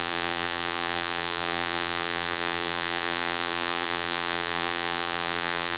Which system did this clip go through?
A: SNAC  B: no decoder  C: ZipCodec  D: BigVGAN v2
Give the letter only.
D